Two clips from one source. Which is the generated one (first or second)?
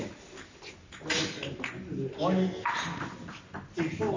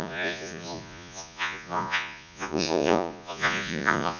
second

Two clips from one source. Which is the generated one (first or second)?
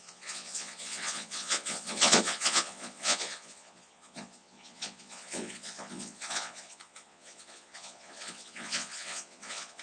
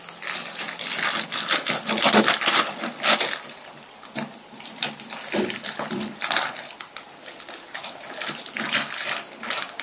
first